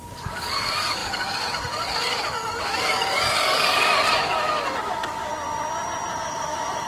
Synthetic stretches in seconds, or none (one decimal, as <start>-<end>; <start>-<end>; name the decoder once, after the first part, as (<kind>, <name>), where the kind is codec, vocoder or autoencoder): 0.0-5.3 (codec, DAC); 6.1-6.9